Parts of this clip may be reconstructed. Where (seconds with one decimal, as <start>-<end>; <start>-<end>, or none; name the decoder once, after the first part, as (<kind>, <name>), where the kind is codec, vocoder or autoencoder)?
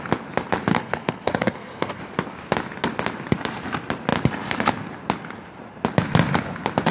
0.7-2.0 (codec, SNAC)